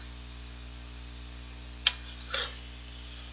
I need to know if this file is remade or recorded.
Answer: recorded